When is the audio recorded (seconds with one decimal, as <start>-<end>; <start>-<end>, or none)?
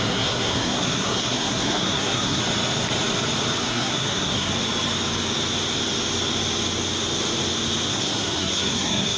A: 2.4-3.7; 4.5-7.9